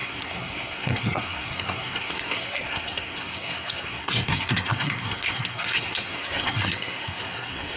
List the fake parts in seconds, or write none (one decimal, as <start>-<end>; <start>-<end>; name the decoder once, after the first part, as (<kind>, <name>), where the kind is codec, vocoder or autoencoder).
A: 0.0-7.8 (codec, SNAC)